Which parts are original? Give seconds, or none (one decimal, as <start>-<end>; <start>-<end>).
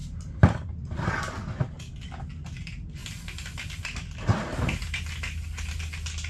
1.1-6.3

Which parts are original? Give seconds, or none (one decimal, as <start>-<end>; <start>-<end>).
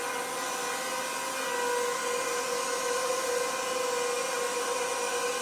0.0-2.3; 3.1-4.5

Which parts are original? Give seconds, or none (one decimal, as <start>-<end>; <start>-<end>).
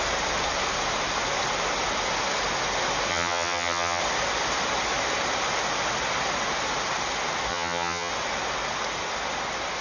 0.0-3.1; 4.0-7.5; 8.1-9.8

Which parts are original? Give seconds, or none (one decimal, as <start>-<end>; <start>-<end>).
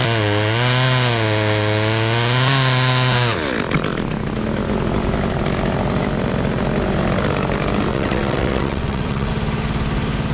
0.0-7.9; 9.3-10.3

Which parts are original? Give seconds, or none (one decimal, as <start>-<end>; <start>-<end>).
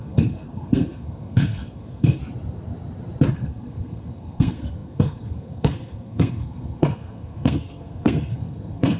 2.2-3.3